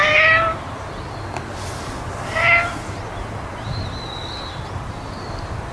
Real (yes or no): yes